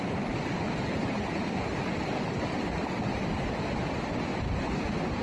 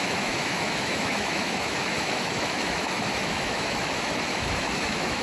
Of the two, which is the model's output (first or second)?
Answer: second